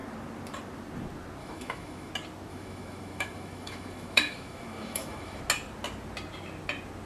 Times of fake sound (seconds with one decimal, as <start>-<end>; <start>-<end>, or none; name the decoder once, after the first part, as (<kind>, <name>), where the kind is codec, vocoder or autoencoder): 1.4-2.1 (autoencoder, DAC-VAE); 2.5-5.4